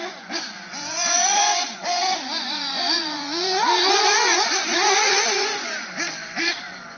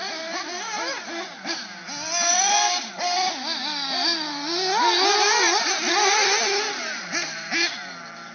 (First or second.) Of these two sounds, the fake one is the first